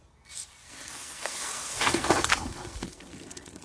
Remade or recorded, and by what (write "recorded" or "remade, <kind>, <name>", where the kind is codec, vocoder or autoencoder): remade, codec, SNAC